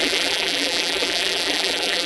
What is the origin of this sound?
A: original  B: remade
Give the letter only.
B